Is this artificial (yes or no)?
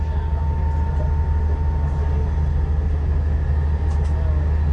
no